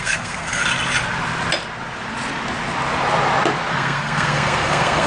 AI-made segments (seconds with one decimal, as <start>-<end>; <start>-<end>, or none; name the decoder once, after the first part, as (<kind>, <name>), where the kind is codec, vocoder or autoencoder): 0.0-0.6 (codec, SNAC); 3.7-5.1